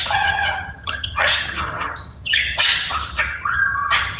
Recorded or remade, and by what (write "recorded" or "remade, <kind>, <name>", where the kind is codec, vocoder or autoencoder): remade, vocoder, HiFi-GAN